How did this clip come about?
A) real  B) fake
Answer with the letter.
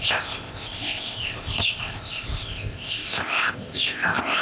B